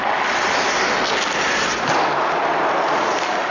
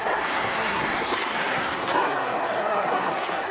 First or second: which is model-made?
second